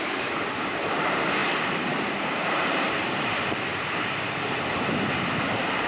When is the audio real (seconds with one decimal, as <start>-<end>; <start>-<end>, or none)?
none